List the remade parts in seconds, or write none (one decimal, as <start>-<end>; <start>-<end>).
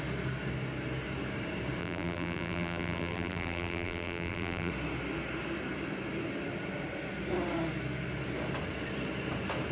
1.8-4.7